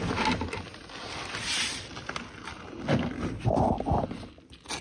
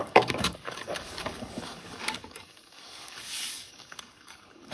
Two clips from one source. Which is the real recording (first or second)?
first